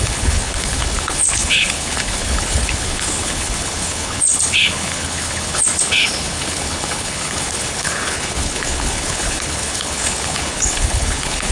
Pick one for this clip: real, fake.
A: fake